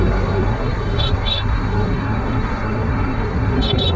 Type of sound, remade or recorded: remade